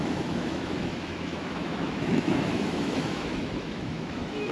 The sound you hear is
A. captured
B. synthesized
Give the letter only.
B